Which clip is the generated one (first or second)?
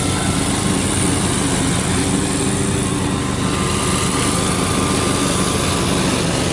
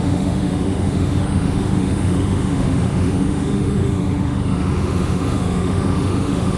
second